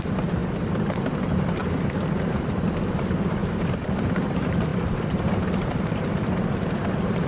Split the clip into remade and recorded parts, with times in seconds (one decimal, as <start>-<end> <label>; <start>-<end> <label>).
0.0-1.6 remade; 1.6-2.2 recorded; 2.2-7.3 remade